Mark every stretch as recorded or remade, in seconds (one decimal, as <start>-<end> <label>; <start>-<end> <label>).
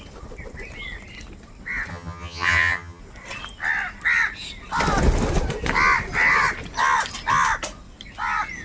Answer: 0.0-1.9 recorded; 1.9-3.0 remade; 3.0-8.6 recorded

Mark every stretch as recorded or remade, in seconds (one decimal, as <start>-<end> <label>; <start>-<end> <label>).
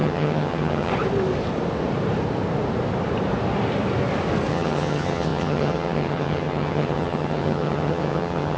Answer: 0.0-0.9 remade; 0.9-4.5 recorded; 4.5-8.6 remade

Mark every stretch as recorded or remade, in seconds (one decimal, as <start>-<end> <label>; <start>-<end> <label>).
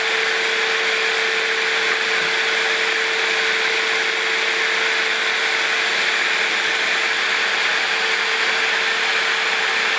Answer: 0.0-10.0 recorded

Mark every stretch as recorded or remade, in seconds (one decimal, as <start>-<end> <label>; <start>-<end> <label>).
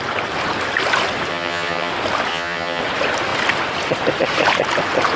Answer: 0.0-1.3 recorded; 1.3-1.9 remade; 1.9-2.3 recorded; 2.3-2.8 remade; 2.8-5.2 recorded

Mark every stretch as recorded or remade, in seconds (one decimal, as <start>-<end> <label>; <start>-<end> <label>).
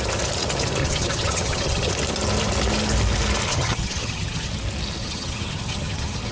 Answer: 0.0-0.8 recorded; 0.8-1.9 remade; 1.9-3.5 recorded; 3.5-4.5 remade; 4.5-5.0 recorded; 5.0-6.3 remade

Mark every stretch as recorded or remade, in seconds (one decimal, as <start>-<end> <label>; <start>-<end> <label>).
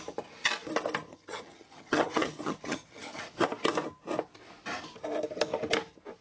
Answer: 0.0-1.1 recorded; 1.1-3.2 remade; 3.2-6.2 recorded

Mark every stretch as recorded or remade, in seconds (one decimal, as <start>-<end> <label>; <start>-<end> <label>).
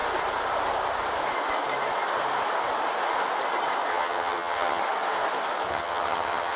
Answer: 0.0-3.9 recorded; 3.9-4.8 remade; 4.8-5.7 recorded; 5.7-6.6 remade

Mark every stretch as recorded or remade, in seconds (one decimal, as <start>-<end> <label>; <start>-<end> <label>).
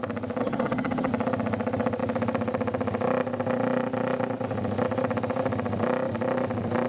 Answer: 0.0-0.4 recorded; 0.4-1.1 remade; 1.1-6.9 recorded